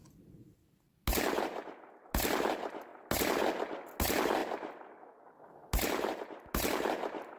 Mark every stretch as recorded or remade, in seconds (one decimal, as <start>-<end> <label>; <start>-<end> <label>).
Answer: 0.0-7.4 recorded